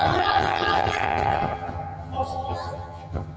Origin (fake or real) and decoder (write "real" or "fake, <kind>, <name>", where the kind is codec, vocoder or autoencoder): fake, vocoder, HiFi-GAN